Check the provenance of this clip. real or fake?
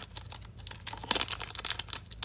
real